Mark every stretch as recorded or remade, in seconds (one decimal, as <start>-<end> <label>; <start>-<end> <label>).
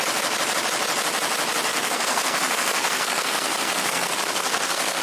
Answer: 0.0-1.7 recorded; 1.7-5.0 remade